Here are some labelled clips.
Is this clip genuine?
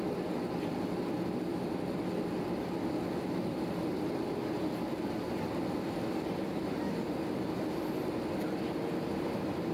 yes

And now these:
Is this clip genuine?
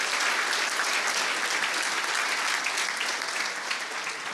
yes